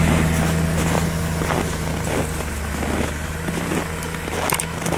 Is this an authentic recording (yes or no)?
yes